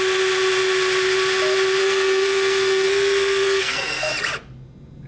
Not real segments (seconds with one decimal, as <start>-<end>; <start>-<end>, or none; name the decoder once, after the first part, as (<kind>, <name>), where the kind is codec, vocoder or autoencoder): 1.8-4.1 (codec, SNAC)

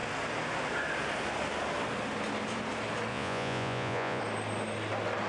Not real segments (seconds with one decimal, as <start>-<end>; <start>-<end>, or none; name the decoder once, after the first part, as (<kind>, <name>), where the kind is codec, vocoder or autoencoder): 3.1-4.2 (vocoder, Vocos)

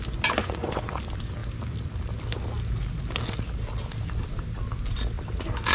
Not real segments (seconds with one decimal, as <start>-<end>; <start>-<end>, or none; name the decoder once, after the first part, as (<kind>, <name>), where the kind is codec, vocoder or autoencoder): 0.4-1.0 (vocoder, Vocos)

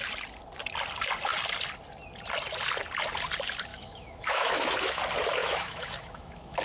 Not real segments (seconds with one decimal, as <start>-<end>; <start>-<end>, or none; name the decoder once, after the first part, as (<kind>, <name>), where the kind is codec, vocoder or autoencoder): 3.7-5.0 (autoencoder, DAC-VAE); 5.4-6.6